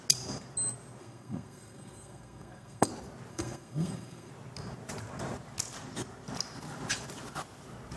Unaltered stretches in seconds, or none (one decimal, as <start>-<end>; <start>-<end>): 0.0-1.0; 2.9-3.3; 4.3-8.0

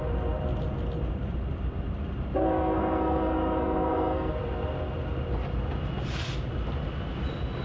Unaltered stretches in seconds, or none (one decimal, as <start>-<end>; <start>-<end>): 0.0-2.4; 4.3-7.6

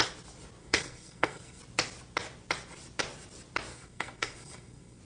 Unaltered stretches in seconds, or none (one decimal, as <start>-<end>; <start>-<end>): 0.0-0.6; 1.6-3.7

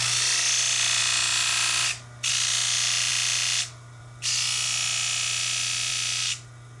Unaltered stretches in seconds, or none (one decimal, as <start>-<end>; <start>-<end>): 0.0-6.8

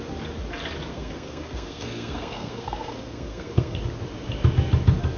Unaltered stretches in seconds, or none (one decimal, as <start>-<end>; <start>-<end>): 0.0-0.9; 3.8-5.2

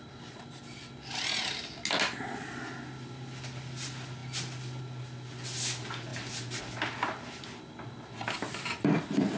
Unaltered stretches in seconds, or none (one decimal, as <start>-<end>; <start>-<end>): 0.0-9.4